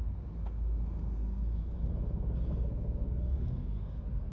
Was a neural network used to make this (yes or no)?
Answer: yes